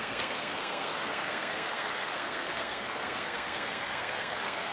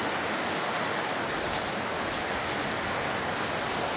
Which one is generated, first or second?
first